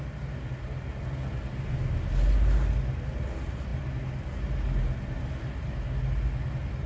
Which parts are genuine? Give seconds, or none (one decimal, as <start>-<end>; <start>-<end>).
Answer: 0.0-6.9